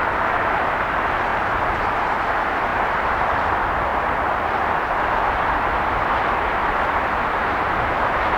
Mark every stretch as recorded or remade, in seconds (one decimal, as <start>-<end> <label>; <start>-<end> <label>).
0.0-1.3 recorded; 1.3-1.8 remade; 1.8-2.7 recorded; 2.7-3.5 remade; 3.5-6.6 recorded; 6.6-7.2 remade; 7.2-8.4 recorded